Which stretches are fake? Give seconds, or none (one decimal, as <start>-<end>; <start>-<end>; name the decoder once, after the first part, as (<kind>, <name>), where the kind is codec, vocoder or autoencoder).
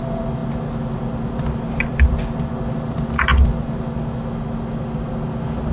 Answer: 1.9-2.5 (vocoder, BigVGAN v2)